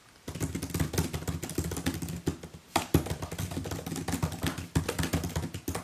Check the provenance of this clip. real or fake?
real